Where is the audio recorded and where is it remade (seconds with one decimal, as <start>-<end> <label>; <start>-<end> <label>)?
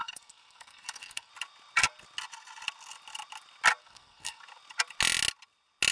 0.0-1.3 remade; 1.3-3.8 recorded; 3.8-4.4 remade; 4.4-5.9 recorded